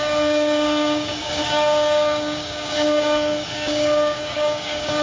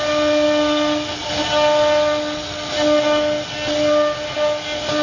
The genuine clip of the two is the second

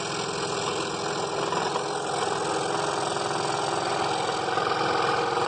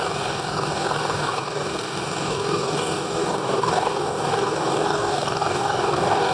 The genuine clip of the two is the first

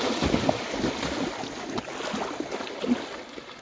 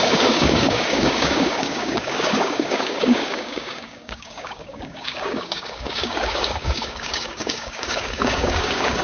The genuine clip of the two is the first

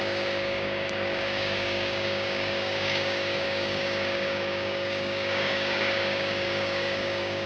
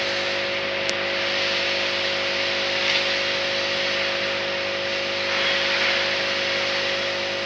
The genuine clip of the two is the second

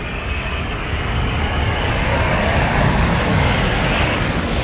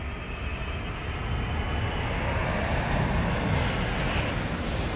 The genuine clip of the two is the second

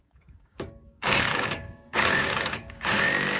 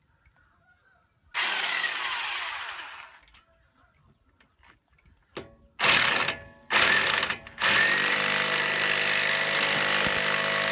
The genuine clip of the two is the second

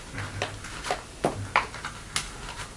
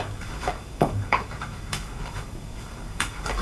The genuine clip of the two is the first